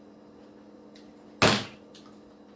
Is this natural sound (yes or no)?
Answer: yes